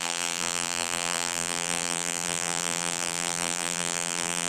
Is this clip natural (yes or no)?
no